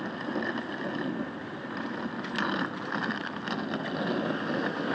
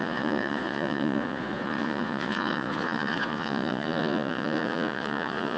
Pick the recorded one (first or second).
first